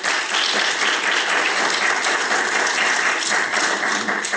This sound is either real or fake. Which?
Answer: real